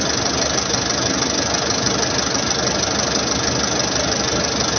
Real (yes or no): yes